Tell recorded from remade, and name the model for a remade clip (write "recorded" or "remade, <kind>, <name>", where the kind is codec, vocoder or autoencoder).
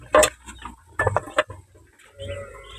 recorded